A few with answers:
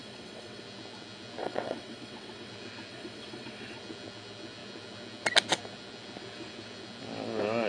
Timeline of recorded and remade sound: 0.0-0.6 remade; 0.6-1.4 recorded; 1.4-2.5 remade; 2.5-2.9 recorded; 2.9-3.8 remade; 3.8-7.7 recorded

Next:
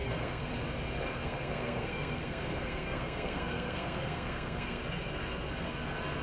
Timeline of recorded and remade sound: 0.0-0.5 remade; 0.5-1.1 recorded; 1.1-4.8 remade; 4.8-6.2 recorded

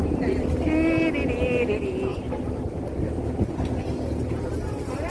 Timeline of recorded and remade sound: 0.0-5.1 recorded

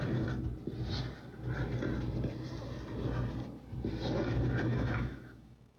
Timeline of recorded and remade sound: 0.0-4.7 recorded; 4.7-5.8 remade

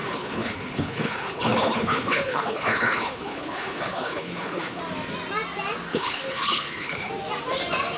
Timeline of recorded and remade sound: 0.0-4.8 remade; 4.8-5.9 recorded; 5.9-7.1 remade; 7.1-8.0 recorded